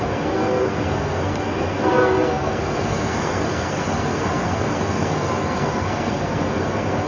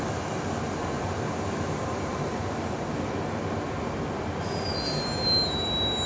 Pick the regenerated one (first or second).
first